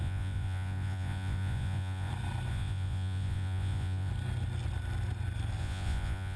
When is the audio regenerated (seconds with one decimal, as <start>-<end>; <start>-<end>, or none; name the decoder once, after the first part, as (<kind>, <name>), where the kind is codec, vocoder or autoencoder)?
0.0-2.1 (vocoder, Vocos); 2.5-4.1; 5.6-6.4